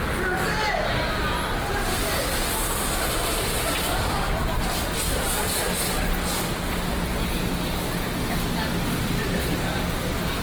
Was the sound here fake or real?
real